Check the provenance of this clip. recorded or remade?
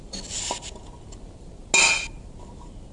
recorded